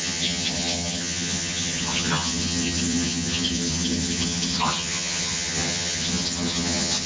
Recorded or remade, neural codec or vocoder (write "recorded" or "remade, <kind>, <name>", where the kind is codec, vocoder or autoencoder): remade, vocoder, HiFi-GAN